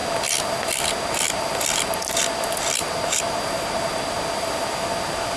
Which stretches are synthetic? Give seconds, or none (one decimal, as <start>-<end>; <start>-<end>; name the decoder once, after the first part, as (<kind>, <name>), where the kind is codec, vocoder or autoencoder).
none